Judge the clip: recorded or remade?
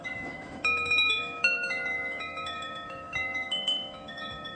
remade